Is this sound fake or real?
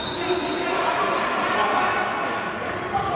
real